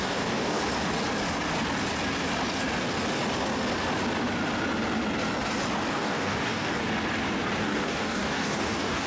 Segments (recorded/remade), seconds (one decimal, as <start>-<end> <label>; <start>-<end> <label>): 0.0-0.6 remade; 0.6-5.9 recorded; 5.9-6.8 remade; 6.8-7.6 recorded; 7.6-9.1 remade

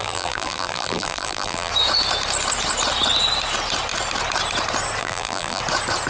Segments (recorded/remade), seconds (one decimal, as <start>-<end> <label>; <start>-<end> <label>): 0.0-1.7 remade; 1.7-5.0 recorded; 5.0-5.6 remade; 5.6-6.1 recorded

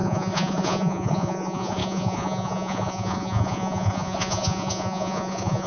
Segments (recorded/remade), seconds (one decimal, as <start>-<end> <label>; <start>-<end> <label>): 0.0-5.7 remade

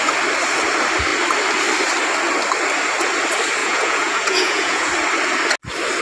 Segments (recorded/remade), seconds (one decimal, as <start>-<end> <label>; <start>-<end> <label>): 0.0-3.6 recorded; 3.6-4.9 remade; 4.9-6.0 recorded

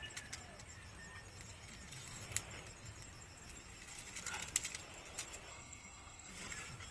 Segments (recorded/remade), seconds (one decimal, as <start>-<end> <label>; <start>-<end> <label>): 0.0-5.5 recorded; 5.5-6.3 remade; 6.3-6.9 recorded

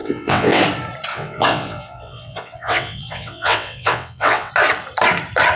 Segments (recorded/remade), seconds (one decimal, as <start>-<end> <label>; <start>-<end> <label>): 0.0-0.6 remade; 0.6-1.1 recorded; 1.1-4.5 remade; 4.5-5.6 recorded